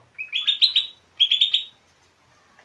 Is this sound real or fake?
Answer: real